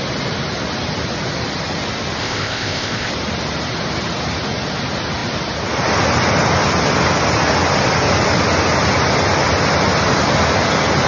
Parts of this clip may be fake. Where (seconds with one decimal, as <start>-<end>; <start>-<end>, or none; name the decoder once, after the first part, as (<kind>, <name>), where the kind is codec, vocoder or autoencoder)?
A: 2.2-3.1 (codec, ZipCodec)